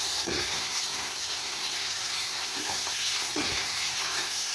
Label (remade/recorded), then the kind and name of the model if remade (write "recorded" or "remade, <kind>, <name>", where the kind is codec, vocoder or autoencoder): remade, codec, SNAC